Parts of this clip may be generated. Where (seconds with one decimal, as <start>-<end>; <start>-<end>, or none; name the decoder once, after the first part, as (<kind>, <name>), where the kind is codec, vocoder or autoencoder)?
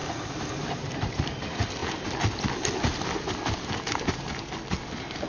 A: none